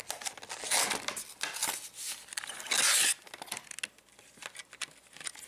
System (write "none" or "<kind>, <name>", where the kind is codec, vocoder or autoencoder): none